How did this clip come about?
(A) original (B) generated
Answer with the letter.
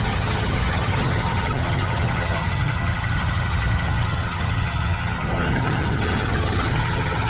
B